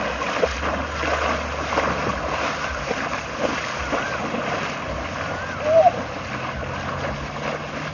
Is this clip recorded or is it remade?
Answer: recorded